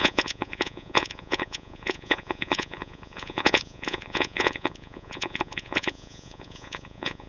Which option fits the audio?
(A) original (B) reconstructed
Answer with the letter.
B